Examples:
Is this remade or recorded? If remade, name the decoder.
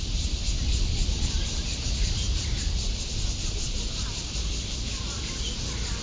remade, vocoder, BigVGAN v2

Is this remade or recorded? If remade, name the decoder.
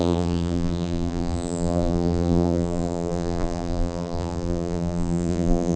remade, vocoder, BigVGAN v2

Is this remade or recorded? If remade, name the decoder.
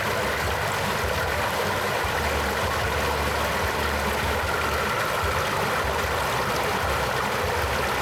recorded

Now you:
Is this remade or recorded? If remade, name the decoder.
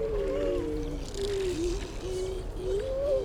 recorded